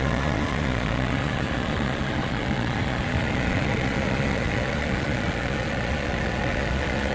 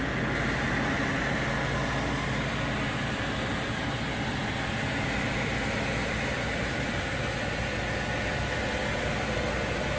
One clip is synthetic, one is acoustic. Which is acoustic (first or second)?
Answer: second